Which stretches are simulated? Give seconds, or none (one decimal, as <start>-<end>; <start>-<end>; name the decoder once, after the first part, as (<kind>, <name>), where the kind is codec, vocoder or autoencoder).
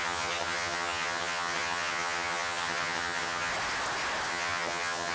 0.0-3.5 (vocoder, HiFi-GAN); 4.3-5.1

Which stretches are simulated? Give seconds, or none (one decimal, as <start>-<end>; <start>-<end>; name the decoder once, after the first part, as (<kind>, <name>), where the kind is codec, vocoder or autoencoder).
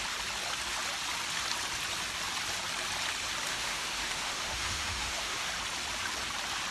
3.5-5.5 (autoencoder, DAC-VAE)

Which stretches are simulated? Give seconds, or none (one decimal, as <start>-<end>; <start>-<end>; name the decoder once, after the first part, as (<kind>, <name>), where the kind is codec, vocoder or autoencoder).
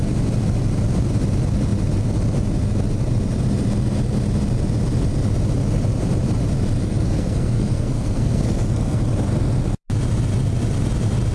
6.8-9.0 (codec, SNAC)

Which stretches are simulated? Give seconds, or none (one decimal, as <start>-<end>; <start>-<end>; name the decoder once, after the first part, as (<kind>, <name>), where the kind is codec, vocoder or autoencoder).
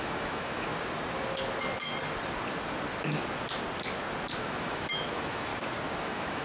0.0-0.7 (autoencoder, DAC-VAE); 4.4-5.5; 6.0-6.4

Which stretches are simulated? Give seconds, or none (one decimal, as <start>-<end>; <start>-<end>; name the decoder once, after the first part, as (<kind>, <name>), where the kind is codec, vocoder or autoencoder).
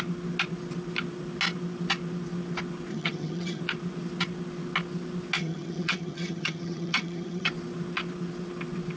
2.9-3.6 (vocoder, HiFi-GAN); 5.4-7.5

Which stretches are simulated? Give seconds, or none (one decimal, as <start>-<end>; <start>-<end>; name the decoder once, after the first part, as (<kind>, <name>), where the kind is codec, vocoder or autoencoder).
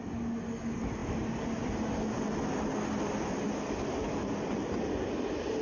none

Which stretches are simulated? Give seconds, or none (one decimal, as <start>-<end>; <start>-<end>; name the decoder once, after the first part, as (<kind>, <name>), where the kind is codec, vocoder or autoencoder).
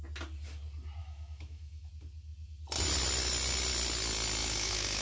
1.0-1.9 (autoencoder, DAC-VAE); 4.4-5.0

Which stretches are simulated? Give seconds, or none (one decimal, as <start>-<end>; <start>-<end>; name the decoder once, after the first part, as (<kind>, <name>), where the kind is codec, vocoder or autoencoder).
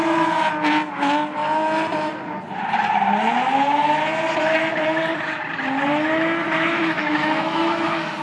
4.4-5.1 (autoencoder, DAC-VAE); 6.7-8.2